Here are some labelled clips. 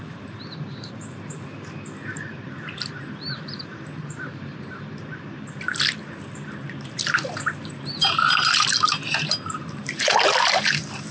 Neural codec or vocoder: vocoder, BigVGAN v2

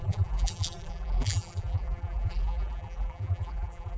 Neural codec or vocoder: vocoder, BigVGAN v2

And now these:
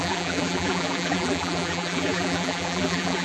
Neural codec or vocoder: vocoder, BigVGAN v2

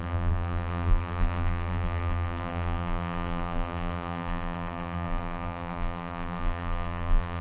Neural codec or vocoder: vocoder, BigVGAN v2